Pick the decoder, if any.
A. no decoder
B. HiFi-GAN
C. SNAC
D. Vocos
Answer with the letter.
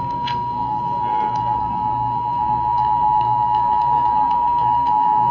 C